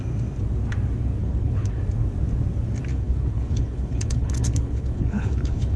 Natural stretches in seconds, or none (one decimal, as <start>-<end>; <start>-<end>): 0.0-1.2; 1.8-2.9